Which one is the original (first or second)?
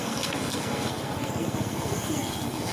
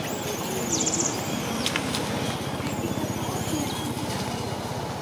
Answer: second